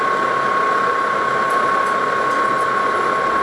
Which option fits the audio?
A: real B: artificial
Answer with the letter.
A